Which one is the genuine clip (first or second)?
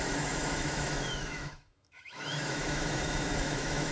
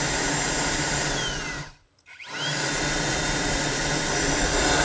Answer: second